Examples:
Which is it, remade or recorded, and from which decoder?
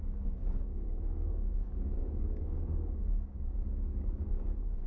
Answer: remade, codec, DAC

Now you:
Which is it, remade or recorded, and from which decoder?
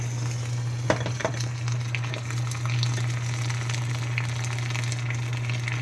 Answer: recorded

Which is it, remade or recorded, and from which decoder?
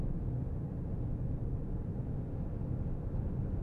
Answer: recorded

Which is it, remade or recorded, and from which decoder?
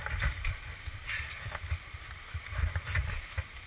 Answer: recorded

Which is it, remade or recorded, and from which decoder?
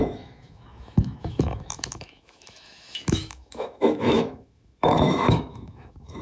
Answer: remade, autoencoder, DAC-VAE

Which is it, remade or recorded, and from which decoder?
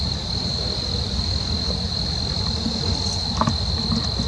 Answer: recorded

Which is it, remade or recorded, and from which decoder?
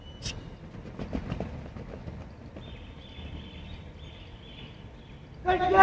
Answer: recorded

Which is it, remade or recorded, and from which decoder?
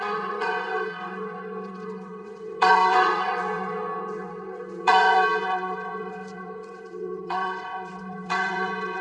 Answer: remade, vocoder, WaveNeXt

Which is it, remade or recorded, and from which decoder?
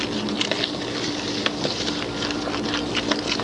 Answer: remade, vocoder, BigVGAN v2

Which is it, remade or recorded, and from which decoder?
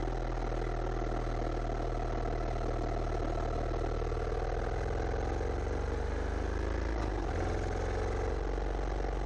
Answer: recorded